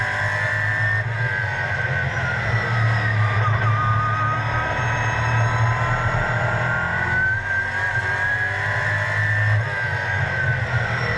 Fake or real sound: real